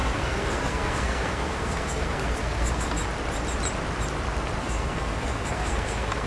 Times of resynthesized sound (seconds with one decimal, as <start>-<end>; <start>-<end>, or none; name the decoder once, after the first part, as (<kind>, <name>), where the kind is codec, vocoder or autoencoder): 0.0-3.0 (codec, SNAC); 4.6-6.3